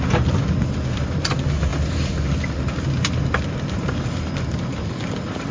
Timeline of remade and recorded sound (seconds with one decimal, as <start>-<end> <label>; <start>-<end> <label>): 0.0-5.5 recorded

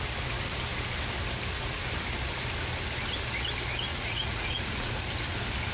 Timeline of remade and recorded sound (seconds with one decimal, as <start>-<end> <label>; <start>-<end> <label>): 0.0-3.9 recorded; 3.9-4.9 remade; 4.9-5.7 recorded